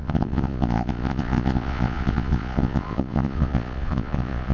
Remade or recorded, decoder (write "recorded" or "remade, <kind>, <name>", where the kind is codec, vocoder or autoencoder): remade, vocoder, Vocos